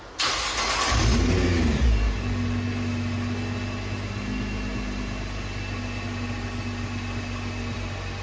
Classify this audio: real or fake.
real